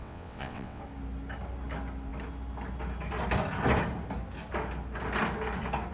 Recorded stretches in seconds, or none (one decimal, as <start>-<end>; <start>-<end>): 0.8-5.9